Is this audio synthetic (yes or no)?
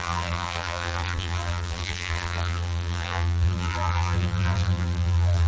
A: yes